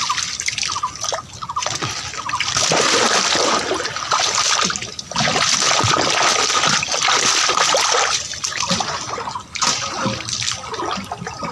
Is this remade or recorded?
recorded